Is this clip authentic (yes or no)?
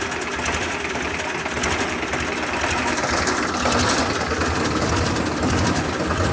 yes